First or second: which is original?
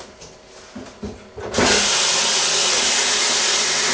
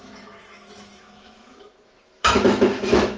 first